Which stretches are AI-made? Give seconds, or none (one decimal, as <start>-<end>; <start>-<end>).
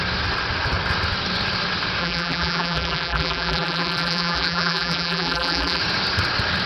2.0-5.8